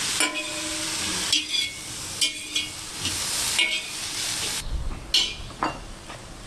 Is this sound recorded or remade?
recorded